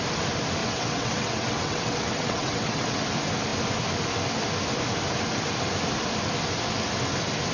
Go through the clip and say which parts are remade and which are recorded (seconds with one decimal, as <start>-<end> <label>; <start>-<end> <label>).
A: 0.0-0.6 recorded; 0.6-3.0 remade; 3.0-7.5 recorded